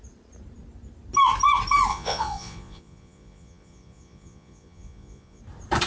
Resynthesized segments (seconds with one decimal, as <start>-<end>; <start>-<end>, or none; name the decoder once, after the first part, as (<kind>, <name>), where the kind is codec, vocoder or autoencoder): 1.9-5.4 (vocoder, Vocos)